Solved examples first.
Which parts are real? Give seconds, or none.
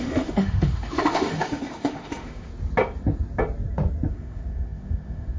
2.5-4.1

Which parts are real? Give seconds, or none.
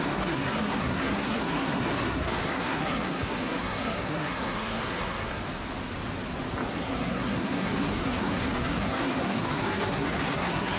5.4-6.7